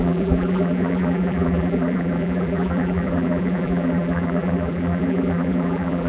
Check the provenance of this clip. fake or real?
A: fake